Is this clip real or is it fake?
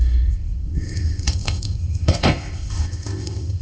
fake